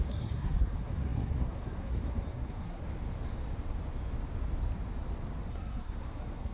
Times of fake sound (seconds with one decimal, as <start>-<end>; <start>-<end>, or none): 0.0-2.8; 5.5-6.5